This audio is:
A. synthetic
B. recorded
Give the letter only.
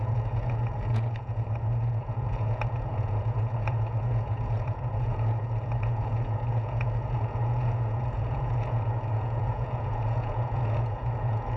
A